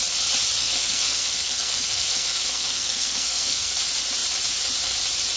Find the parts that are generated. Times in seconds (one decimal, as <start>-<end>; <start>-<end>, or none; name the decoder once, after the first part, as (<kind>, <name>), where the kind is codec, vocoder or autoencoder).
0.6-3.8 (codec, SNAC)